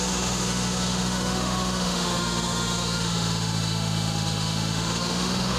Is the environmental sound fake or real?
fake